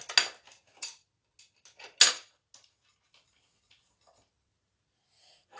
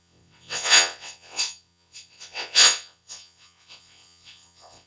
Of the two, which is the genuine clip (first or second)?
first